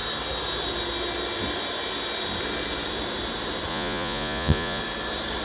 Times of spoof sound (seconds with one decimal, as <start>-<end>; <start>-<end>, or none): 3.7-4.8